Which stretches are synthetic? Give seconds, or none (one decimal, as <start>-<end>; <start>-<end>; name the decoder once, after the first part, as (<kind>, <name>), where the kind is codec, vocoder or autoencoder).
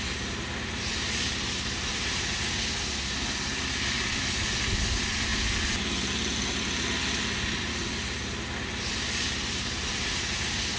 none